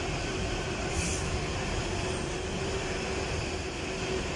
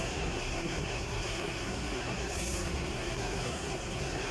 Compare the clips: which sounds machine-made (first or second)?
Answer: second